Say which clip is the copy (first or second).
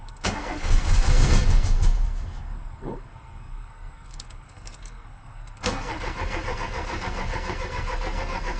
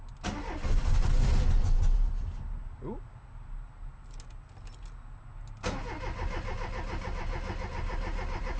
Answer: first